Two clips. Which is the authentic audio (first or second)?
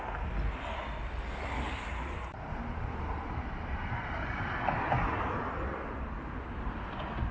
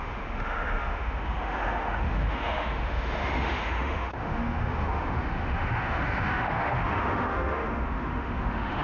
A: first